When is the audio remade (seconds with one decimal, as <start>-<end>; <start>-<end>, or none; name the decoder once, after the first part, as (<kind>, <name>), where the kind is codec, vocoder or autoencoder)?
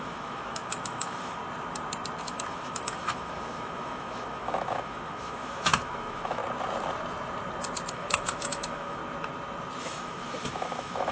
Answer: 0.0-1.4 (autoencoder, DAC-VAE); 2.2-6.4; 7.9-9.0; 9.8-11.1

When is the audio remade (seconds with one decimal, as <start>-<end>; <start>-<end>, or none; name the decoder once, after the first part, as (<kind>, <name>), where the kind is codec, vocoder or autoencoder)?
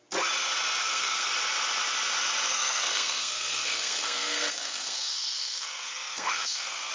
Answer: 0.8-1.3 (codec, SNAC); 2.5-6.9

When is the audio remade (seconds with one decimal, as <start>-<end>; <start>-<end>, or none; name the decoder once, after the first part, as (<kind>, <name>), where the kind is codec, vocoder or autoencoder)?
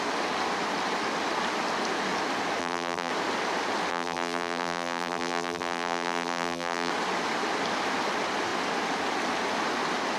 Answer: 2.6-3.1 (vocoder, BigVGAN v2); 3.9-6.9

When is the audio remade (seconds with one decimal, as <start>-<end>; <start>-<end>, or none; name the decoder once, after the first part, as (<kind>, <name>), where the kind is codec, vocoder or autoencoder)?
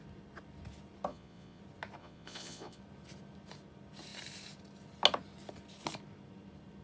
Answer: 1.1-1.6 (vocoder, Vocos); 2.0-2.8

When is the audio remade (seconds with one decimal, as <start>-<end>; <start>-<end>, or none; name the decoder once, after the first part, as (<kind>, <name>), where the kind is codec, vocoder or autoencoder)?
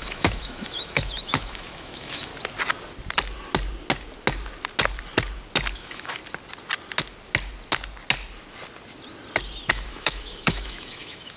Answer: 0.0-2.3 (autoencoder, DAC-VAE); 5.7-6.2; 9.7-11.4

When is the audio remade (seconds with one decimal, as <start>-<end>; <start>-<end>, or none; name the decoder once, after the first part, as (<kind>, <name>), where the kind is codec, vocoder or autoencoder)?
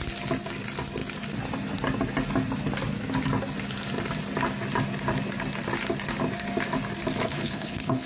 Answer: 7.2-8.1 (codec, HILCodec)